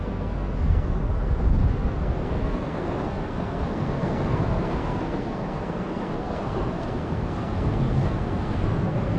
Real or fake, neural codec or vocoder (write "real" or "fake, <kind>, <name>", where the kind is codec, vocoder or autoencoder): fake, codec, SNAC